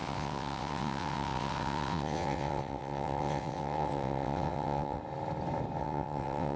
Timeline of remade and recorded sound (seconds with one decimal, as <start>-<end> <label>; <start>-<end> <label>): 0.0-5.0 remade; 5.0-5.8 recorded; 5.8-6.6 remade